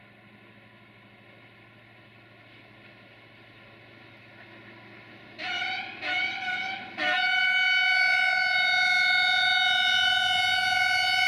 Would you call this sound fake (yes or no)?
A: no